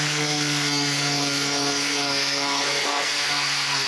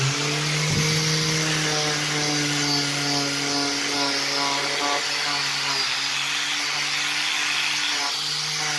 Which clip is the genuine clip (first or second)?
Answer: second